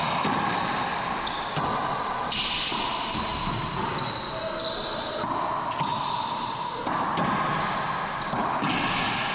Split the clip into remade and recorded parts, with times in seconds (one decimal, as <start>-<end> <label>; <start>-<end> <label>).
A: 0.0-9.3 recorded